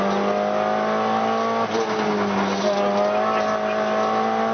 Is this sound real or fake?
real